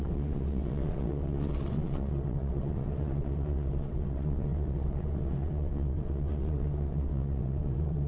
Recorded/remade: remade